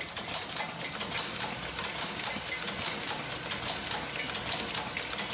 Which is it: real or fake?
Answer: real